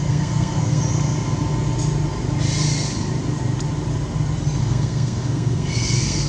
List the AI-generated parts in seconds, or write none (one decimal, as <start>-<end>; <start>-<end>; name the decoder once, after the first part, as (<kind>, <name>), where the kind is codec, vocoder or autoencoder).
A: 0.0-0.8 (codec, SNAC); 4.6-6.3